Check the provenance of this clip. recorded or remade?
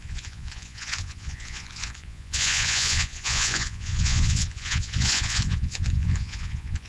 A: remade